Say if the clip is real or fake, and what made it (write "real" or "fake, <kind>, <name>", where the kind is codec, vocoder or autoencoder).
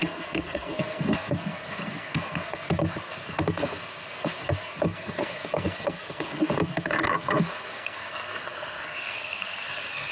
fake, codec, SNAC